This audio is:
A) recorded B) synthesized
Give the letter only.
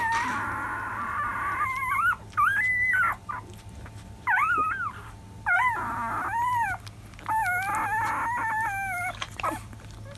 A